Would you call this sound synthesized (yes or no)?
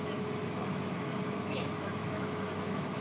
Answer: yes